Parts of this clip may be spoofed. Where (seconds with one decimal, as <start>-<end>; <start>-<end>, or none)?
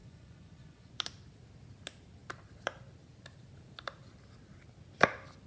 0.0-0.9